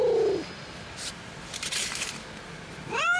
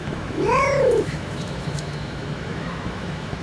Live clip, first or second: first